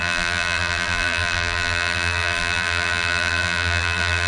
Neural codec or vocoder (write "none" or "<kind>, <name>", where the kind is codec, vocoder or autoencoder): vocoder, BigVGAN v2